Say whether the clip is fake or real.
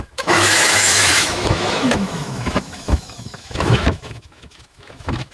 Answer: fake